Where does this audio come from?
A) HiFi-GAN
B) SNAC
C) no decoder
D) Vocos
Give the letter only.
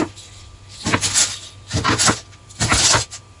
C